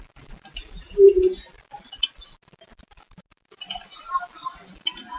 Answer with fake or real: real